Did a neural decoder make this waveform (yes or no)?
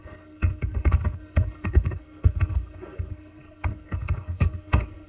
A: yes